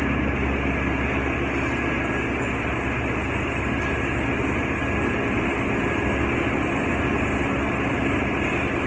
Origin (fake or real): real